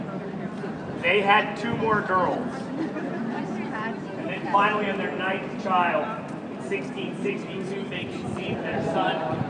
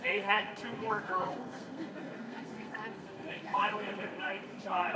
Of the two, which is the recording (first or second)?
first